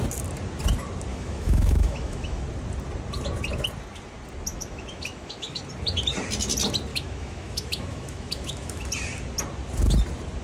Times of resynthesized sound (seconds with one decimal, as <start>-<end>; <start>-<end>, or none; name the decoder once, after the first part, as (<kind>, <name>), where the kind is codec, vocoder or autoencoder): 1.1-2.4 (autoencoder, DAC-VAE); 4.5-5.6; 6.9-8.9